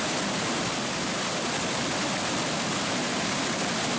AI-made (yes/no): no